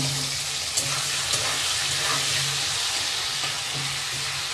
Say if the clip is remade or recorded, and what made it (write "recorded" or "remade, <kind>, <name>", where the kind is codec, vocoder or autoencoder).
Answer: recorded